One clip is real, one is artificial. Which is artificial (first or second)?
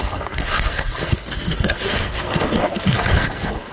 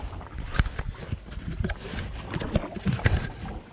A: first